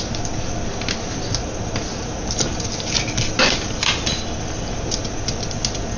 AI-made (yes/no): no